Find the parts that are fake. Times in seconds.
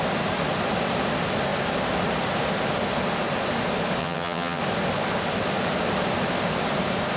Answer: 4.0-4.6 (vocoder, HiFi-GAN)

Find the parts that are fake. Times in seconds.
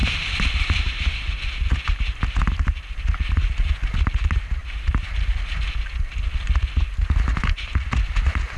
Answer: 0.0-1.6 (vocoder, BigVGAN v2); 4.6-5.4; 7.3-7.8